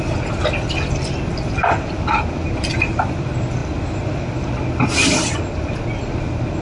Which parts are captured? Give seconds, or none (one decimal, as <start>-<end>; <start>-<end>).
0.0-6.6